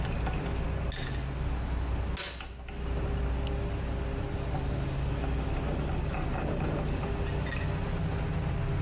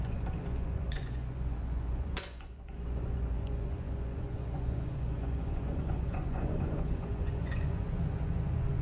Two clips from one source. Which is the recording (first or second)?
first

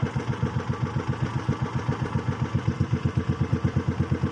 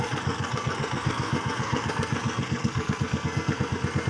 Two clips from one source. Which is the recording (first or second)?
first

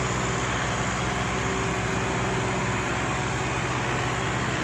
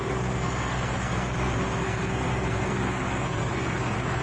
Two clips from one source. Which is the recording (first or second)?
first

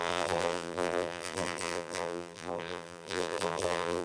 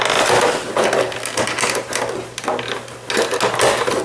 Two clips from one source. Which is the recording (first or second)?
second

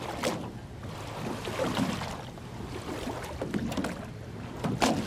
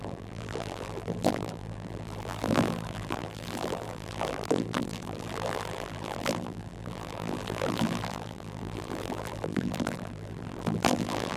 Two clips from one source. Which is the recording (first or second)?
first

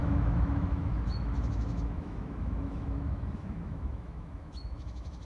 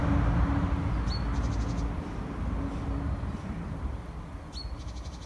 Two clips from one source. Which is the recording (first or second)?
second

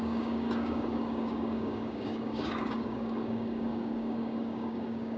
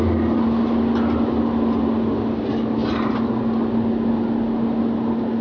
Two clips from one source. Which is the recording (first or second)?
second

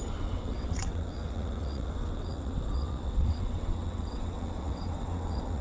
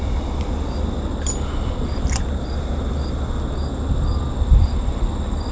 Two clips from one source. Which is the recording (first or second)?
second